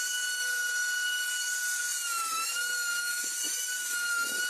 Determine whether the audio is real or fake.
fake